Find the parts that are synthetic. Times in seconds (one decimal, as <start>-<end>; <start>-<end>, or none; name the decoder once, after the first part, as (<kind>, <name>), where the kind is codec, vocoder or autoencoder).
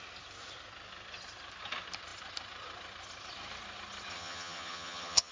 4.1-5.3 (vocoder, HiFi-GAN)